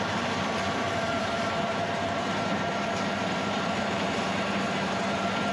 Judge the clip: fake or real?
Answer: fake